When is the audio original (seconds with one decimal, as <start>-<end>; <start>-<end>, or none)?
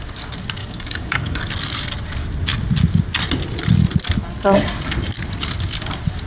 0.0-0.6; 1.5-6.3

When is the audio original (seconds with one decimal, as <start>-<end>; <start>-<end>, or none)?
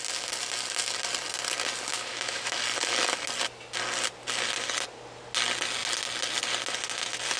0.0-1.9; 2.6-7.4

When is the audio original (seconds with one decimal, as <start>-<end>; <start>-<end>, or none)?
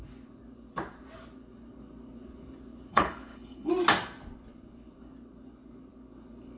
0.0-2.9; 3.7-6.6